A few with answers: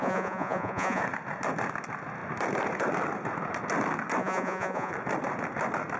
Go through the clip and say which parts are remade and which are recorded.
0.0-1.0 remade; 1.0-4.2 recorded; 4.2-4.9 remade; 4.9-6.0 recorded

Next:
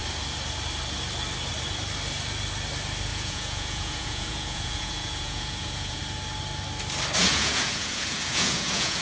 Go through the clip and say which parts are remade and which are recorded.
0.0-3.1 recorded; 3.1-6.0 remade; 6.0-7.2 recorded; 7.2-9.0 remade

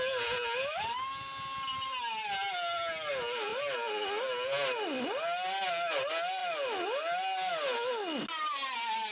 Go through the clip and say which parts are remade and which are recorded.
0.0-9.1 recorded

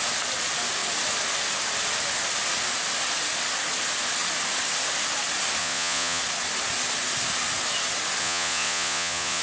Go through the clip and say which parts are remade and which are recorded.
0.0-5.6 recorded; 5.6-6.2 remade; 6.2-8.2 recorded; 8.2-9.4 remade

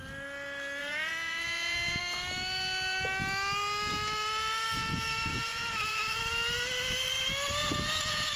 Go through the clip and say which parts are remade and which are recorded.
0.0-0.8 recorded; 0.8-2.0 remade; 2.0-5.3 recorded; 5.3-6.2 remade; 6.2-7.6 recorded; 7.6-8.4 remade

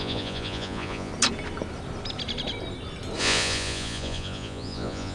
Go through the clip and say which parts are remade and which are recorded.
0.0-1.1 remade; 1.1-3.2 recorded; 3.2-5.1 remade

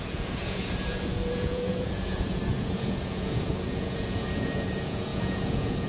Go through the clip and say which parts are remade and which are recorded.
0.0-5.9 remade

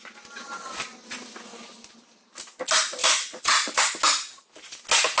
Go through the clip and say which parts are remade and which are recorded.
0.0-3.0 recorded; 3.0-3.8 remade; 3.8-5.2 recorded